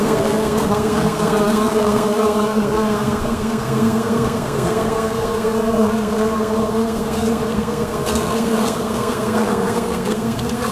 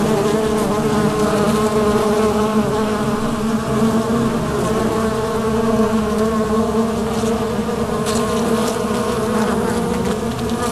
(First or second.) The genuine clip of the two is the second